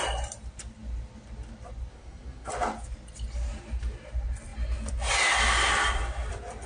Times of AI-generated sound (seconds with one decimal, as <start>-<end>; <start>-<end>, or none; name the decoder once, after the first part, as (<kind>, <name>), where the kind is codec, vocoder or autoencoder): 1.9-2.5 (codec, SNAC)